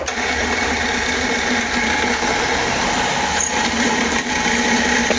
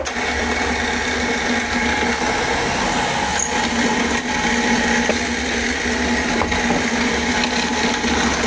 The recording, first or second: second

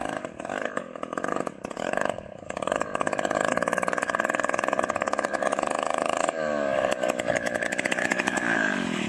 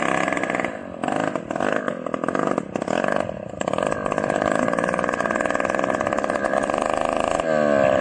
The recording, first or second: second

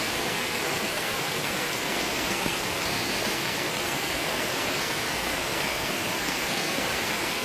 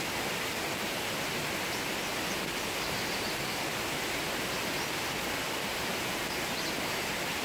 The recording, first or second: second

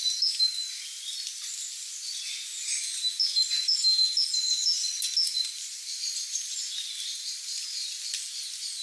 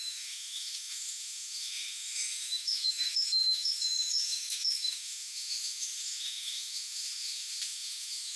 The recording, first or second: first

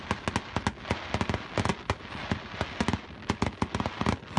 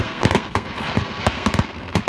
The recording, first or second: first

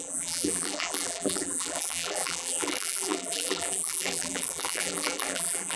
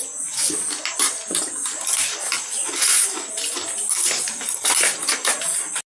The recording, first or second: second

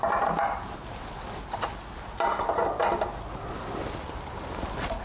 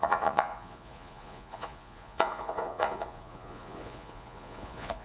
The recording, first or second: first